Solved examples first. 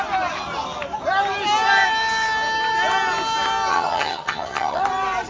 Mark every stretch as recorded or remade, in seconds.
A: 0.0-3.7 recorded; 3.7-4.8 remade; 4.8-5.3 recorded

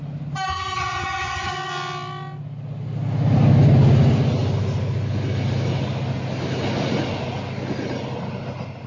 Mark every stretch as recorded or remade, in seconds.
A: 0.0-0.5 recorded; 0.5-1.5 remade; 1.5-8.9 recorded

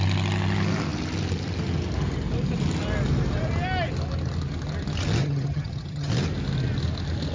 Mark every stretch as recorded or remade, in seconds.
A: 0.0-5.2 recorded; 5.2-6.1 remade; 6.1-7.3 recorded

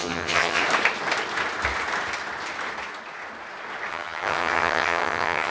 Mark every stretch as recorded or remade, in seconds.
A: 0.0-0.6 remade; 0.6-3.9 recorded; 3.9-5.5 remade

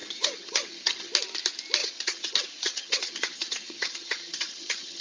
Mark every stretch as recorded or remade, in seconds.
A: 0.0-1.1 remade; 1.1-1.8 recorded; 1.8-5.0 remade

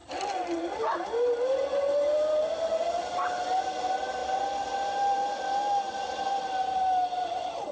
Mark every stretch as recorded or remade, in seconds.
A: 0.0-7.7 recorded

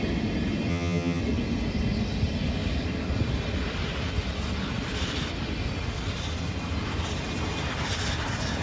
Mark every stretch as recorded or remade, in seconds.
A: 0.0-0.7 recorded; 0.7-1.2 remade; 1.2-8.6 recorded

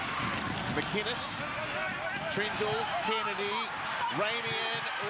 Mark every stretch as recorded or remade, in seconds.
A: 0.0-5.1 recorded